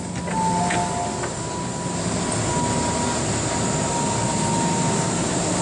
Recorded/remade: recorded